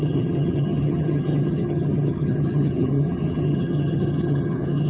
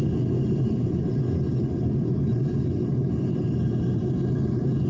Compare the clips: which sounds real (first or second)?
second